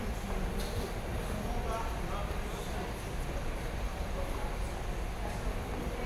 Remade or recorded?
recorded